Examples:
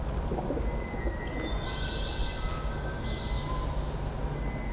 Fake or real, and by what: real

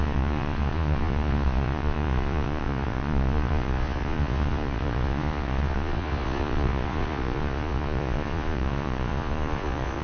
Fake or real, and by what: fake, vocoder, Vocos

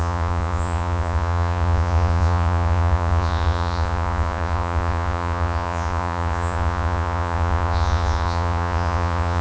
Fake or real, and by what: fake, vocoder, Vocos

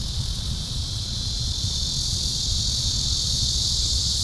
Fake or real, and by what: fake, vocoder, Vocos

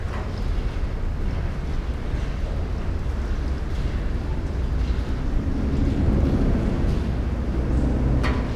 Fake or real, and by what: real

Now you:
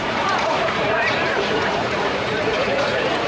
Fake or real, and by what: fake, vocoder, Vocos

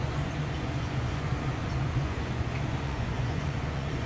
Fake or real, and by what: fake, vocoder, Vocos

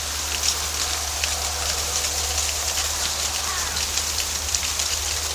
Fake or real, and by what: real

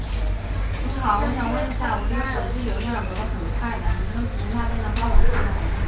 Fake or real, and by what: real